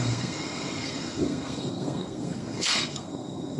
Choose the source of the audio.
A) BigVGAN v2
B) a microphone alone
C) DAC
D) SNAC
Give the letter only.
D